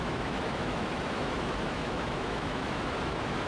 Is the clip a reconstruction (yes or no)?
yes